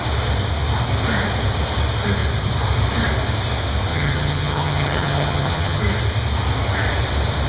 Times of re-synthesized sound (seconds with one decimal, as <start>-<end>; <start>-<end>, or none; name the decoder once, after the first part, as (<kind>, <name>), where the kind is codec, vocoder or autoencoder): 3.9-5.8 (vocoder, HiFi-GAN)